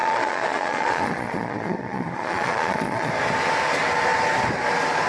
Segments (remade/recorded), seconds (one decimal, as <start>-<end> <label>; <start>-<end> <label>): 0.0-3.1 remade; 3.1-5.1 recorded